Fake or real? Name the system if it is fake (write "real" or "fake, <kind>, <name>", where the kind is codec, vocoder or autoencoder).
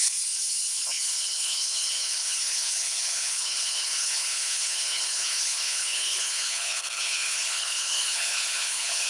fake, codec, HILCodec